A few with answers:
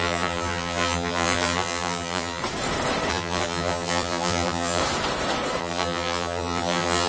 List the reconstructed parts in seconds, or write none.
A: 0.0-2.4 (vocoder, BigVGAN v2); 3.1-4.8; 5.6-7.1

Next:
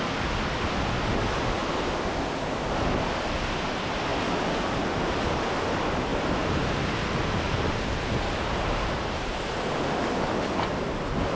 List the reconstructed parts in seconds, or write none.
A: 6.1-9.8 (vocoder, BigVGAN v2)

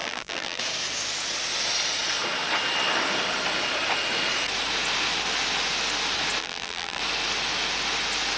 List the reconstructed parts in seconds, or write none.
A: 0.0-0.6 (vocoder, BigVGAN v2); 6.4-7.0

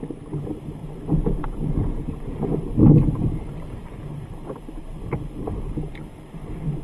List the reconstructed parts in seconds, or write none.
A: 0.8-2.4 (vocoder, BigVGAN v2); 2.8-6.1

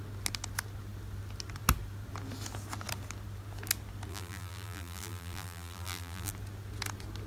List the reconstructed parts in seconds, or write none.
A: 4.1-6.3 (vocoder, BigVGAN v2)

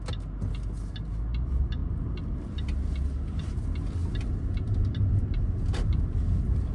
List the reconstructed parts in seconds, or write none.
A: 4.0-5.2 (vocoder, BigVGAN v2)

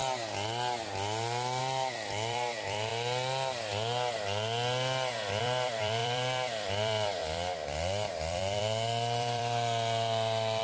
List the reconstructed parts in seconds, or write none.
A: 1.6-2.9 (vocoder, BigVGAN v2); 5.4-10.6